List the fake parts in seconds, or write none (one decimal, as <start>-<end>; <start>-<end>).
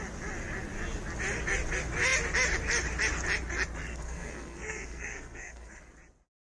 3.9-5.8